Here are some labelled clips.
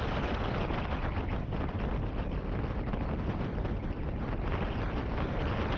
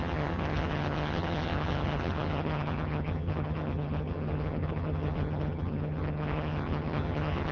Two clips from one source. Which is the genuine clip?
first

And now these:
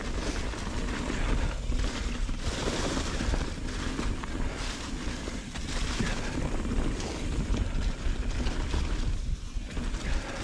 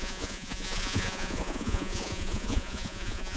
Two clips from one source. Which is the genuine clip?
first